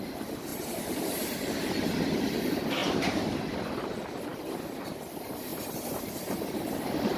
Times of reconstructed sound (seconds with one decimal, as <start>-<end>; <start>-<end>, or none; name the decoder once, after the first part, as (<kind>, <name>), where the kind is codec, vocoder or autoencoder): 0.5-1.7 (vocoder, BigVGAN v2); 2.8-3.6